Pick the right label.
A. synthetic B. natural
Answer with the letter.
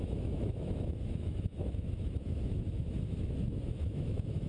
A